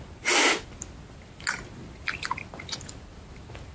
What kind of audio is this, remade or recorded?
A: recorded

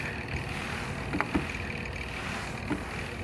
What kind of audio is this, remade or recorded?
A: recorded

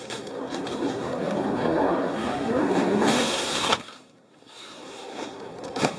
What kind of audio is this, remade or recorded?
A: remade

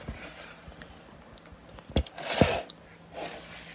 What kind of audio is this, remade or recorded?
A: recorded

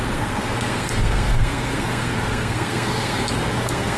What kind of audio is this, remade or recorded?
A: remade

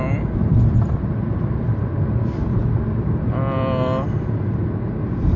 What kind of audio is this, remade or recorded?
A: recorded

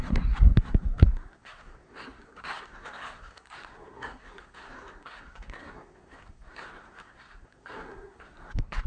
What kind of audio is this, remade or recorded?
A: remade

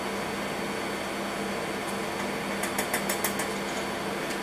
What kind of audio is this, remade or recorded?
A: recorded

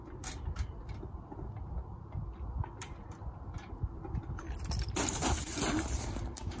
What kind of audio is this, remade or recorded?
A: recorded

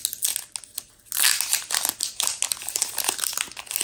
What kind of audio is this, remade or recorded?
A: recorded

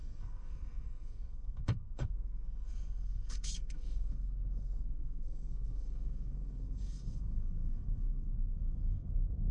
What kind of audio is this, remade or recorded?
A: remade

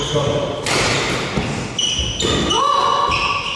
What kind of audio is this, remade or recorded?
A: recorded